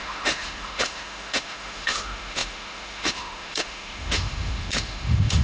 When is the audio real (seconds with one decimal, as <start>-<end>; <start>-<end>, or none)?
none